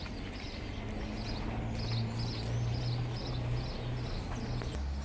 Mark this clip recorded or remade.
recorded